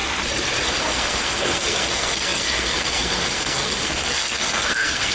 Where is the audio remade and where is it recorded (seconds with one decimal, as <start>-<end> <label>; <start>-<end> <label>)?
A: 0.0-0.8 recorded; 0.8-5.1 remade